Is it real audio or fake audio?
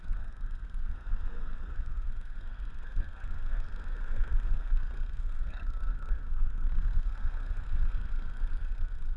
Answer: fake